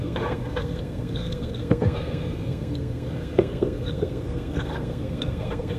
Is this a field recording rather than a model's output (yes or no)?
no